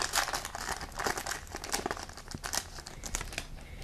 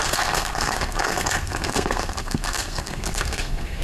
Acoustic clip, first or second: first